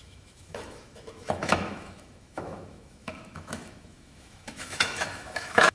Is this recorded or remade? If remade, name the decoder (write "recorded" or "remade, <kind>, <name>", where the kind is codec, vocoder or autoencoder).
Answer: remade, autoencoder, DAC-VAE